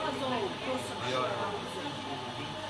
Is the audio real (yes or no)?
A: yes